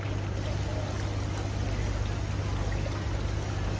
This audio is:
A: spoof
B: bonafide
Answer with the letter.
B